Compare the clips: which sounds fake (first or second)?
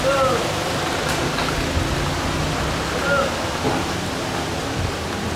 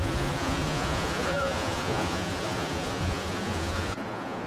second